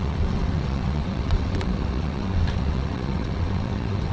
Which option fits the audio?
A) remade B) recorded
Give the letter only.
A